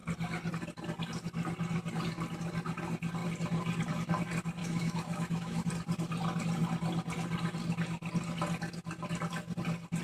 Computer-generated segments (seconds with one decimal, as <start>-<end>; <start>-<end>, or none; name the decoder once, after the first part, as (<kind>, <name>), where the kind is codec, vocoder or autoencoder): 4.6-5.7 (autoencoder, DAC-VAE)